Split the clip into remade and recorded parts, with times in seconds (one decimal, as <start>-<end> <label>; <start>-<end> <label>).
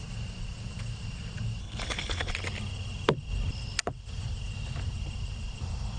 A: 0.0-1.6 recorded; 1.6-2.3 remade; 2.3-6.0 recorded